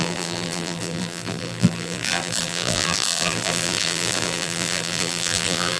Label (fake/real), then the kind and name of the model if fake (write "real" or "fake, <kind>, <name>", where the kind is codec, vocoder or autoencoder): fake, vocoder, BigVGAN v2